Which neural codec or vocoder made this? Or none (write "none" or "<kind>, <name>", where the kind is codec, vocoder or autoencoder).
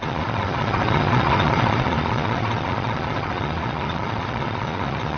vocoder, Vocos